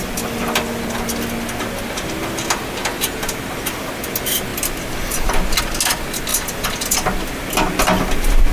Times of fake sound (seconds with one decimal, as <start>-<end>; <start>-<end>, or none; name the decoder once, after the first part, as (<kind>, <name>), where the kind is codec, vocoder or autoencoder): none